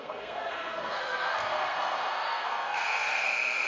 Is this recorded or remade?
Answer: remade